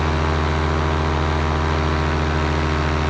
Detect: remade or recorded recorded